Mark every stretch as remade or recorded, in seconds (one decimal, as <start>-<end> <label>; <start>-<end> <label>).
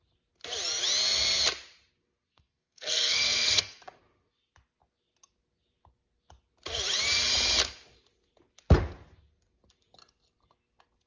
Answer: 0.0-2.3 recorded; 2.3-3.8 remade; 3.8-11.1 recorded